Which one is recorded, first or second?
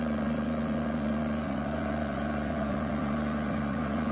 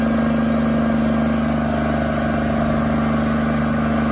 second